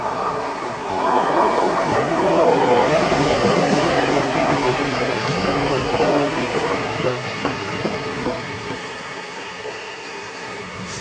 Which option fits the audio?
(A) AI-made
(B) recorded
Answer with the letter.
A